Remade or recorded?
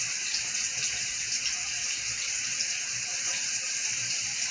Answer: remade